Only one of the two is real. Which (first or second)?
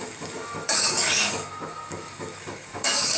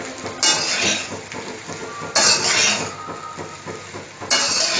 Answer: second